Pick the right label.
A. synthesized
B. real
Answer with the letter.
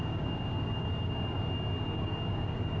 A